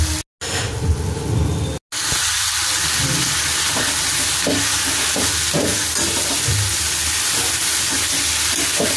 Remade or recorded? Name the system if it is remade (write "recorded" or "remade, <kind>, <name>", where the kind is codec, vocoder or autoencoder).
recorded